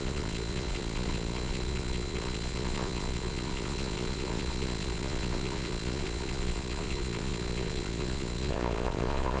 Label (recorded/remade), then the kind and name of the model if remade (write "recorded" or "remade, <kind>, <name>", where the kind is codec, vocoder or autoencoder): remade, vocoder, Vocos